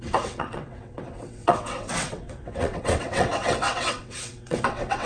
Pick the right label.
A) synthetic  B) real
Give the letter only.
A